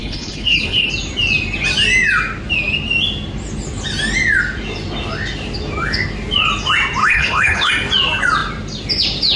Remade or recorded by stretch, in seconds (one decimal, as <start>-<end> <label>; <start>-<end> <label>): 0.0-0.9 remade; 0.9-7.0 recorded; 7.0-7.7 remade; 7.7-9.4 recorded